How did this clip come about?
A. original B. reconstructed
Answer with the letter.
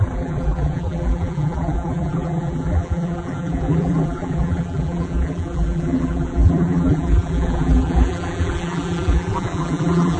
B